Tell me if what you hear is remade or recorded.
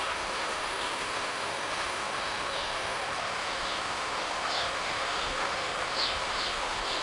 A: remade